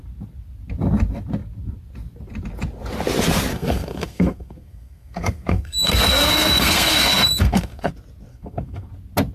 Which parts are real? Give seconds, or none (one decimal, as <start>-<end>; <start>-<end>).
0.0-3.5; 7.9-8.3; 8.9-9.3